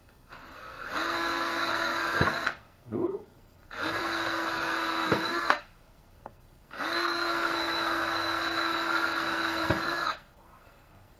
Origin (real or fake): fake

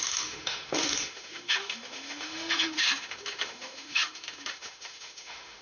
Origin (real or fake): fake